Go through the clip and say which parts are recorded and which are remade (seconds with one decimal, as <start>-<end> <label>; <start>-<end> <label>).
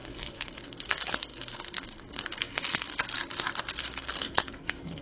0.0-3.0 remade; 3.0-3.8 recorded; 3.8-5.0 remade